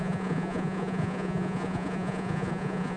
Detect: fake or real fake